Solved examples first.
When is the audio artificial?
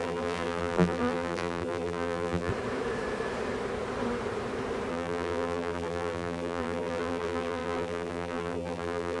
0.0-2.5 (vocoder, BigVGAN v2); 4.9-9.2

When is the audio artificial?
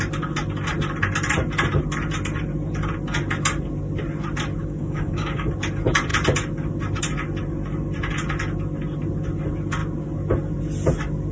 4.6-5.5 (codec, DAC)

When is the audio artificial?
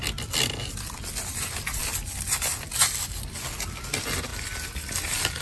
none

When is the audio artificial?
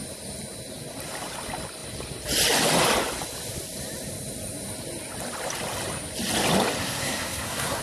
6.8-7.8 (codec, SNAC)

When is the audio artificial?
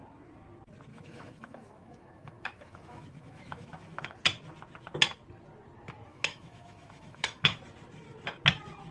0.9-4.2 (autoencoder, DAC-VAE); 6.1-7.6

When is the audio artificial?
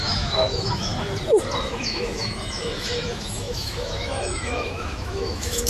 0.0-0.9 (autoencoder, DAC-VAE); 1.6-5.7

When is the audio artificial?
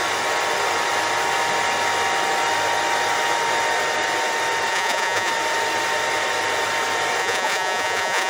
4.7-5.3 (vocoder, Vocos); 7.2-8.3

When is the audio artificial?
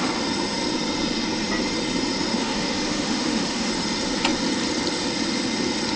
2.4-3.7 (autoencoder, DAC-VAE)